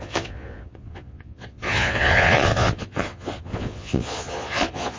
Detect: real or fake fake